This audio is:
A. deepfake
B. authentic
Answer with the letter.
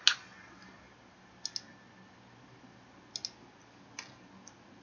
B